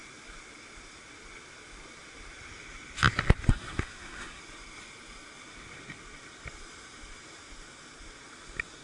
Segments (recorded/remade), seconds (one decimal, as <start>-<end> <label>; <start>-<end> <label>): 0.0-3.5 recorded; 3.5-4.4 remade; 4.4-8.8 recorded